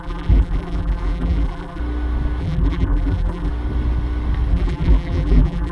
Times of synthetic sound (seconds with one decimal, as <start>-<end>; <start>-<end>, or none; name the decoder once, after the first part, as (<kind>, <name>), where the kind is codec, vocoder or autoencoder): 0.0-1.8 (vocoder, BigVGAN v2); 2.4-3.5; 4.5-5.7